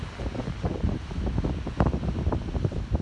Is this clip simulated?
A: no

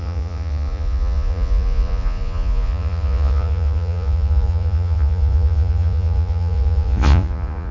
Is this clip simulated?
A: yes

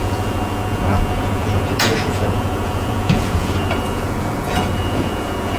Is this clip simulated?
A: yes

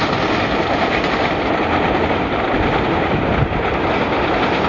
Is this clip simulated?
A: no